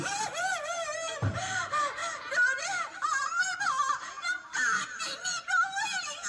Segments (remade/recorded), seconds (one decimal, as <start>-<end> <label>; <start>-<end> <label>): 0.0-2.0 remade; 2.0-2.6 recorded; 2.6-6.3 remade